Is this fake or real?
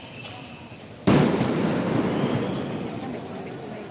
real